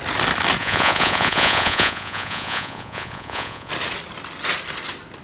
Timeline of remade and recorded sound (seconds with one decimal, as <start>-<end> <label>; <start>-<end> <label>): 0.0-0.6 recorded; 0.6-3.7 remade; 3.7-5.2 recorded